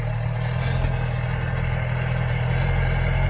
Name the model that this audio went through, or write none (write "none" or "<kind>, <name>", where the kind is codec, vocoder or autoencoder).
none